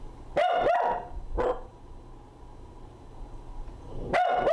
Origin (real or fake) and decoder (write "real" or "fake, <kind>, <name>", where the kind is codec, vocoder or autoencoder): real